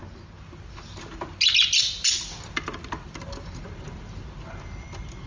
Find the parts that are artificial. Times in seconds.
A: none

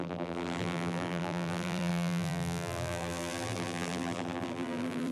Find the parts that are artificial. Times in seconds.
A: 0.0-5.1 (vocoder, BigVGAN v2)

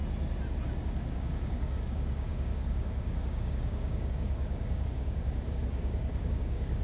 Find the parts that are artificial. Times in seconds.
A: 0.8-6.8 (codec, DAC)

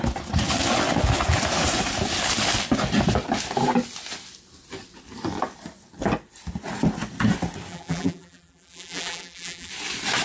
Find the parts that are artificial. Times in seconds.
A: 7.7-9.7 (vocoder, BigVGAN v2)

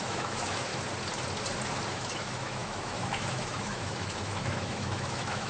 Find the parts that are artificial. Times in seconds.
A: 0.0-0.7 (autoencoder, DAC-VAE); 1.9-5.5

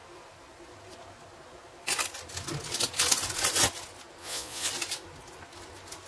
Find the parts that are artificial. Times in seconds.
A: 4.2-4.7 (vocoder, Vocos)

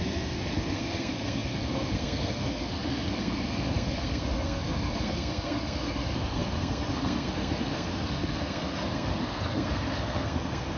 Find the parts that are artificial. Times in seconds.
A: 0.0-10.8 (codec, SNAC)